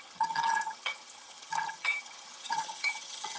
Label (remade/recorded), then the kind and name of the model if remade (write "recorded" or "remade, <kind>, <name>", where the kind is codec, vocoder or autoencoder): remade, vocoder, HiFi-GAN